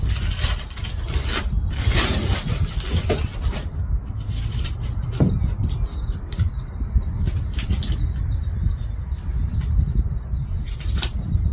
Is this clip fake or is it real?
real